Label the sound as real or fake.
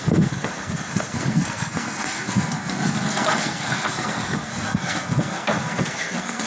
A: fake